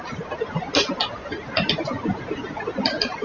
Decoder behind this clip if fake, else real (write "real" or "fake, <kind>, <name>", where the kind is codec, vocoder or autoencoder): real